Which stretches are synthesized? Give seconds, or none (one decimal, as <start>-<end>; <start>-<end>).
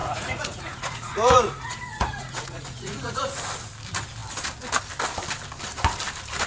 0.0-3.2